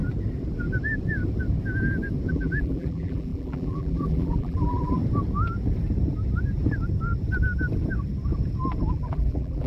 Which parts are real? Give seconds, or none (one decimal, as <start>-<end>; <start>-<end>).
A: 0.0-2.3; 5.0-8.9